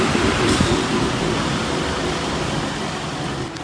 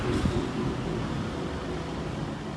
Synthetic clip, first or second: first